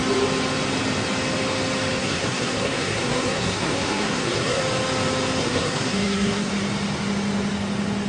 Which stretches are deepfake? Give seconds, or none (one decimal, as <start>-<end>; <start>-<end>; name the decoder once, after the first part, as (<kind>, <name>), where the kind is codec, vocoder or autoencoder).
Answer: 2.0-4.6 (codec, SNAC); 5.4-6.5